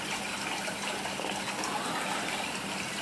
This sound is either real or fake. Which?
fake